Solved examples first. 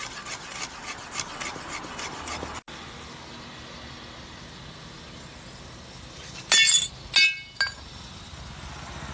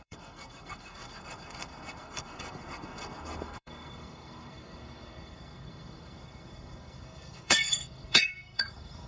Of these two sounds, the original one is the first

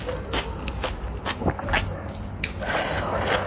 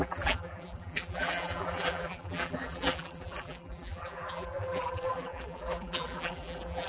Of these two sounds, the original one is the first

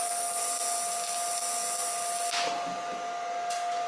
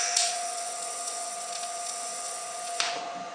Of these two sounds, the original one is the first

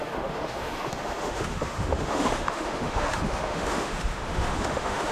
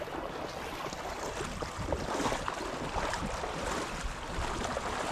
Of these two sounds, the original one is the second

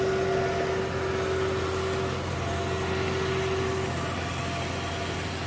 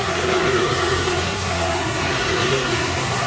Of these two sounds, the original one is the first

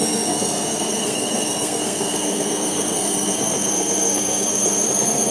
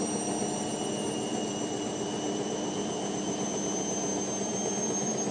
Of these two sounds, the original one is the second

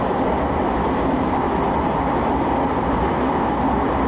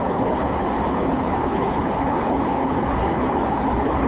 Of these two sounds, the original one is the first